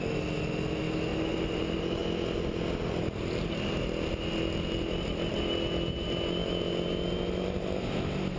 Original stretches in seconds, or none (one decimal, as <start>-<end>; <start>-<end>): 0.0-8.4